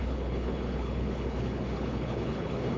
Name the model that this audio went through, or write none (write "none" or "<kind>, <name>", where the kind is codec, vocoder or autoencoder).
codec, HILCodec